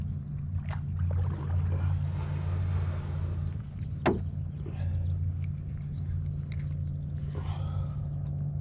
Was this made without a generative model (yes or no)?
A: yes